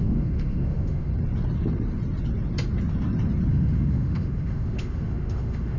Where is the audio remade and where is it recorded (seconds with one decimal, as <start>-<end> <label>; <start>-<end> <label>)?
0.0-1.1 remade; 1.1-3.5 recorded; 3.5-5.8 remade